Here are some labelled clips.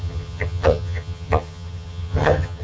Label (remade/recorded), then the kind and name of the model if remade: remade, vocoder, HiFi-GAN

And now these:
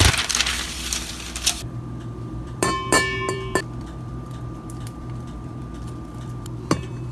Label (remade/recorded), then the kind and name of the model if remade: remade, vocoder, BigVGAN v2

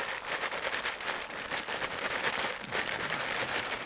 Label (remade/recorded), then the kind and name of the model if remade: remade, vocoder, BigVGAN v2